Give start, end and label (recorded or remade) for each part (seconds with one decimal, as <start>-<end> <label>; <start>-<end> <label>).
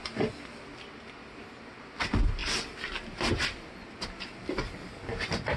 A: 0.0-5.6 recorded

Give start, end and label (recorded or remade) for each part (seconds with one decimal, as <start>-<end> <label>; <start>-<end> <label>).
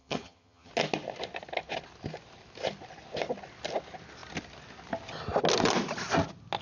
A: 0.0-0.7 remade; 0.7-6.6 recorded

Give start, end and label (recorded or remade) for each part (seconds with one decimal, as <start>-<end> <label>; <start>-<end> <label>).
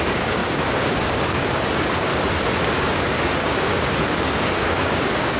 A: 0.0-2.1 remade; 2.1-2.7 recorded; 2.7-3.7 remade; 3.7-4.2 recorded; 4.2-5.4 remade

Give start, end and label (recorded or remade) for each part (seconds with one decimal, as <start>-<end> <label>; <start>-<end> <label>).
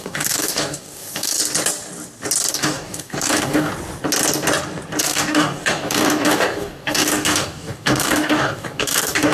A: 0.0-1.4 remade; 1.4-2.5 recorded; 2.5-3.7 remade; 3.7-5.0 recorded; 5.0-9.3 remade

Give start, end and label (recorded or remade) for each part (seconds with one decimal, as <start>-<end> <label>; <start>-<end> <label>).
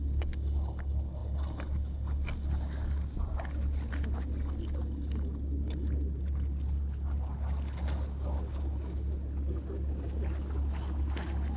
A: 0.0-11.6 recorded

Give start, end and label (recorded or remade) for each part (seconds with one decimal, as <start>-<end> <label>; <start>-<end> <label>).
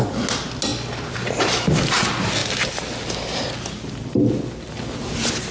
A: 0.0-5.5 recorded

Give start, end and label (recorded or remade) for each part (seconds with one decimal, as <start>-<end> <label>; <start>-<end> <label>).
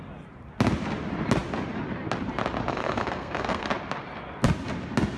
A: 0.0-2.7 recorded; 2.7-3.7 remade; 3.7-5.2 recorded